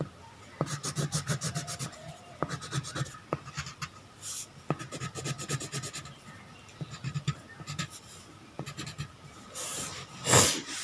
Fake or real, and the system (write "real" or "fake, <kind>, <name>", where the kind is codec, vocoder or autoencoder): real